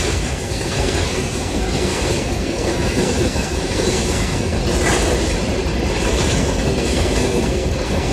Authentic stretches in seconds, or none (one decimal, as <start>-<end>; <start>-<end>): 4.6-6.1